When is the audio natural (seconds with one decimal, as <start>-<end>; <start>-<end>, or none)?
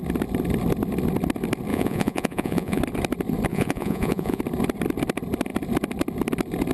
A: 0.0-1.7; 2.8-3.5; 4.4-6.7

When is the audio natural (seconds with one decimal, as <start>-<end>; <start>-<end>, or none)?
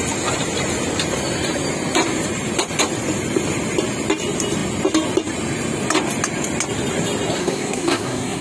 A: 0.0-7.4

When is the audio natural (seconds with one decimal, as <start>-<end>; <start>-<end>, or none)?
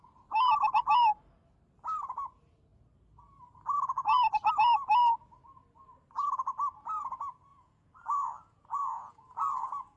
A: 0.0-7.5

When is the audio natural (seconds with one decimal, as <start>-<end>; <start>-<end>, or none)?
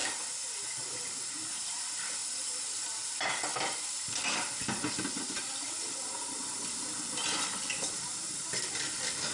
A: 0.0-1.6; 2.2-2.8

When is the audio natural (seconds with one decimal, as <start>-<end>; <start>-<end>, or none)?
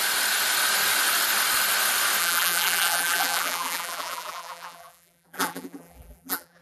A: 0.0-2.2